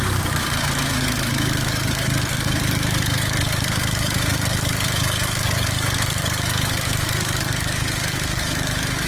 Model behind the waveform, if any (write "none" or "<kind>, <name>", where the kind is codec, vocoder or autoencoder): codec, DAC